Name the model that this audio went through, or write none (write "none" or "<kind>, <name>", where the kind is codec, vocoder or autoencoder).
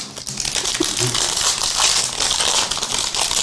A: none